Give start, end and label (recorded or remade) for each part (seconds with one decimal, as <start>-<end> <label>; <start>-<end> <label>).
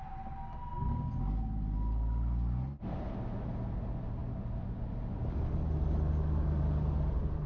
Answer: 0.0-7.5 recorded